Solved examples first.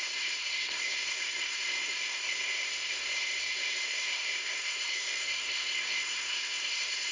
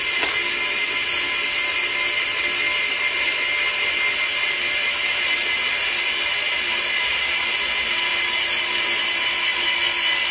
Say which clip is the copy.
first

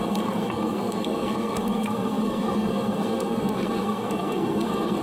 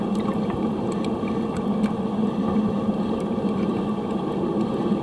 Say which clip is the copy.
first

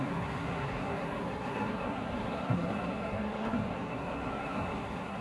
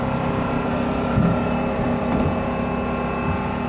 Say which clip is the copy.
first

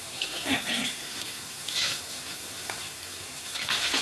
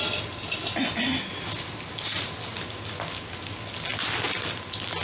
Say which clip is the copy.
first